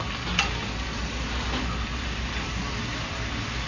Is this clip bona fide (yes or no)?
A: yes